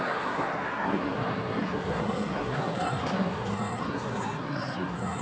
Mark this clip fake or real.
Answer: fake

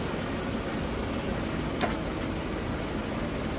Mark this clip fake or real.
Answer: real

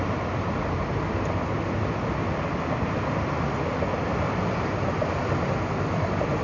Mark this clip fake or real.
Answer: real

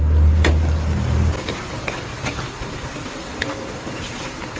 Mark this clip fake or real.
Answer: real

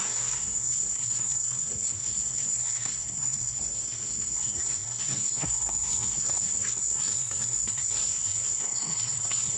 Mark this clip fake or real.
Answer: fake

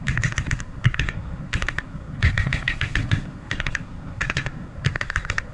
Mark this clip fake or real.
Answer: fake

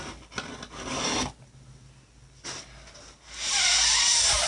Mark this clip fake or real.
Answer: real